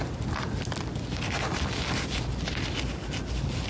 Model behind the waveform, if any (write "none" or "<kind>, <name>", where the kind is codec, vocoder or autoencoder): none